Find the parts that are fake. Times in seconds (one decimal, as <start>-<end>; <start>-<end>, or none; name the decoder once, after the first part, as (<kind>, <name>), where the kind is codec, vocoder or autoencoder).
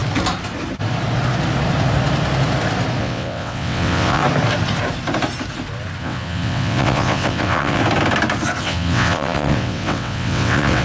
3.0-4.2 (vocoder, WaveNeXt); 6.0-7.8; 8.6-10.8